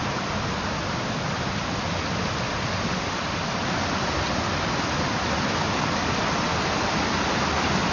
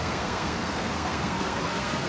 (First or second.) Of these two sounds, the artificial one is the second